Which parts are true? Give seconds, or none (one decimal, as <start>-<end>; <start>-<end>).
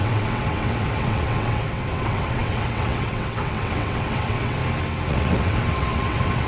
4.6-5.1